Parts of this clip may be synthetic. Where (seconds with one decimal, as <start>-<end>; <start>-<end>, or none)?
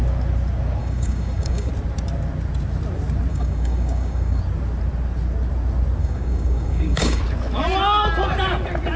0.8-1.7; 3.3-4.4; 6.0-7.2